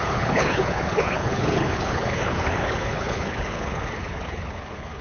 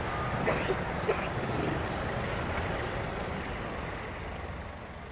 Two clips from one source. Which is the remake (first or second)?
first